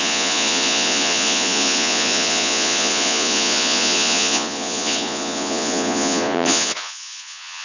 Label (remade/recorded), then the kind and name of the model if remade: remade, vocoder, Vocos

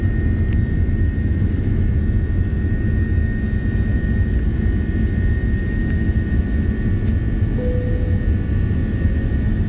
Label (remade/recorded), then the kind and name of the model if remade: recorded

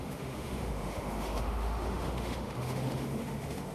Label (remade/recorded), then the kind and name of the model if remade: remade, autoencoder, DAC-VAE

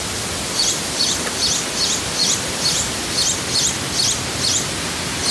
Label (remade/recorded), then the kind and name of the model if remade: recorded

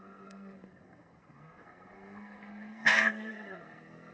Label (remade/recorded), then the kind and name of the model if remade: remade, codec, SNAC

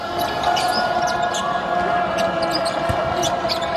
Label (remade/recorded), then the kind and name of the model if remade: recorded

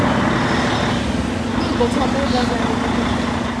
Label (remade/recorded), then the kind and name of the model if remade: recorded